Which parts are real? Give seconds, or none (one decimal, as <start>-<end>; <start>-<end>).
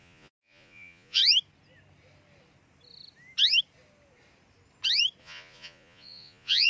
1.2-5.2